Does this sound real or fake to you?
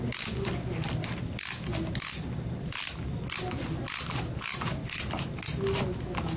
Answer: real